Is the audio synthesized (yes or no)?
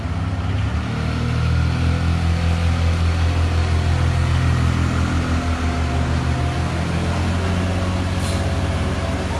no